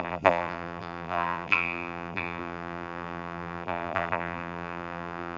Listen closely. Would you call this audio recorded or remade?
remade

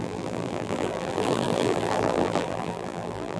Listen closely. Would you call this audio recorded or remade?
remade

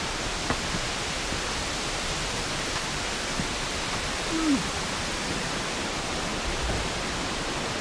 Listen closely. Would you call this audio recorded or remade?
recorded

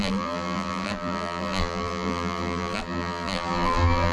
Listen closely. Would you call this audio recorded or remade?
remade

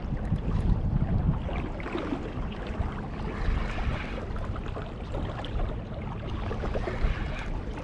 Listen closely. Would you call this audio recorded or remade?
recorded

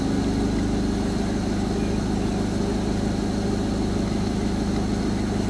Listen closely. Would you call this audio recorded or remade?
recorded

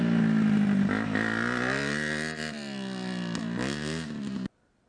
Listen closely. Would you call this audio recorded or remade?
recorded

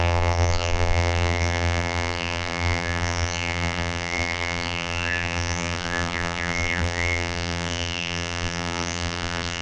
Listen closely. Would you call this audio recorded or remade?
remade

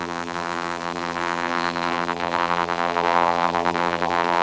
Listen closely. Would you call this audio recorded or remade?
remade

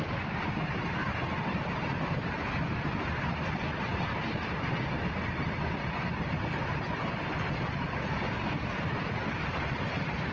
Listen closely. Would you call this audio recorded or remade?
recorded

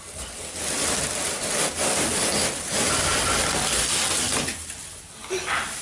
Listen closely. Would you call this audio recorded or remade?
recorded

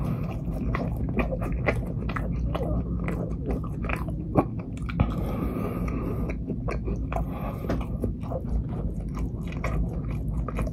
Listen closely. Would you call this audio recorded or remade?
recorded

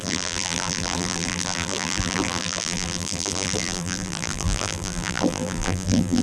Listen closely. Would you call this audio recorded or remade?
remade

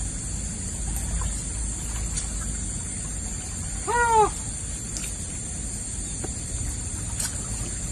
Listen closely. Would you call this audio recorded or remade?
recorded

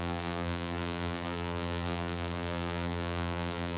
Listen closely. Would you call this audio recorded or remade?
remade